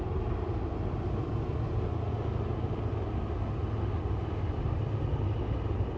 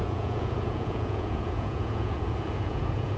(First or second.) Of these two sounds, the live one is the first